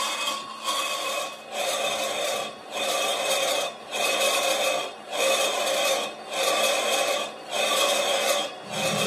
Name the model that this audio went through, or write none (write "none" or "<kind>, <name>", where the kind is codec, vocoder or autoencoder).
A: none